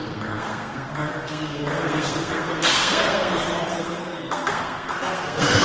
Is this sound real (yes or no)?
no